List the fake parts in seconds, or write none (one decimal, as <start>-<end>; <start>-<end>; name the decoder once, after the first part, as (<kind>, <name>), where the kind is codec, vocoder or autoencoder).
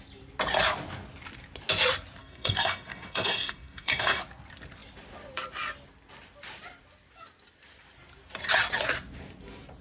2.2-4.2 (codec, SNAC)